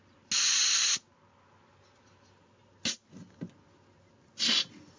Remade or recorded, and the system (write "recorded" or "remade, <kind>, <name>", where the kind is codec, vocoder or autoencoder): recorded